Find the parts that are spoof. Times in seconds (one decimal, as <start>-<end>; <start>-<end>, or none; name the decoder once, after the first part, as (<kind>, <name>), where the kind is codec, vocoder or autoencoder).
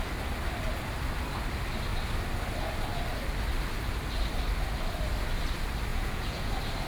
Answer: 5.9-6.5 (vocoder, Vocos)